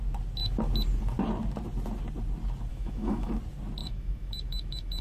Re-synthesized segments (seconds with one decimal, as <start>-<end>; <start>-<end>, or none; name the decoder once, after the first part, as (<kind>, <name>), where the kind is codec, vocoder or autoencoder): 2.7-3.3 (autoencoder, DAC-VAE); 3.8-5.0